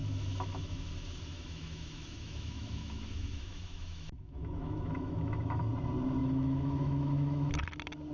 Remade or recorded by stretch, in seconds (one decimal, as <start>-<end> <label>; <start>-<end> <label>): 0.0-0.9 remade; 0.9-1.3 recorded; 1.3-5.6 remade; 5.6-6.2 recorded; 6.2-7.5 remade; 7.5-8.1 recorded